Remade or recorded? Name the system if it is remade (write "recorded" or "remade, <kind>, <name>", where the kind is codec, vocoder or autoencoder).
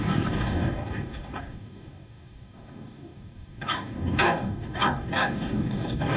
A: remade, codec, DAC